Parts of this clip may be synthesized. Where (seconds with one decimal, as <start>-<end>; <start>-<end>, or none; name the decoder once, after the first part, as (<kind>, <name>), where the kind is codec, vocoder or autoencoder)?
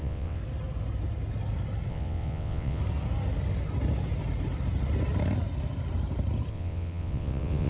0.0-0.4 (vocoder, WaveNeXt); 1.9-2.8; 6.5-7.7